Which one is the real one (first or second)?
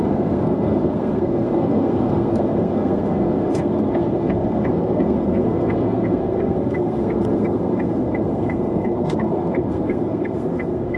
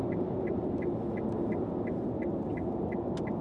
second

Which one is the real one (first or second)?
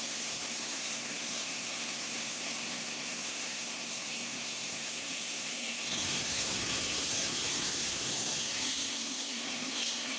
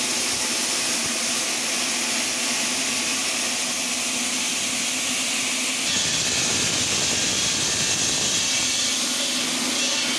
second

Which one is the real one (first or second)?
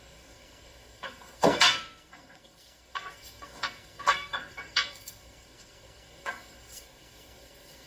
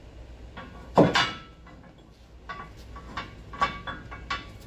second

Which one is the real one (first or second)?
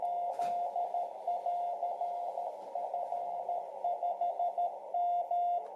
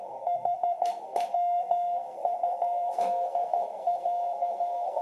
first